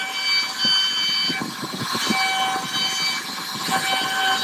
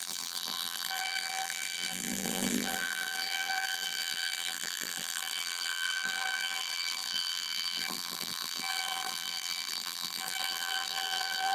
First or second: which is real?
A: first